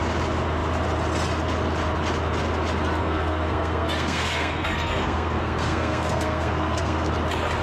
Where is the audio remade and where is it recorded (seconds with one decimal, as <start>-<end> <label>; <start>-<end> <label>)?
0.0-3.0 recorded; 3.0-7.1 remade; 7.1-7.6 recorded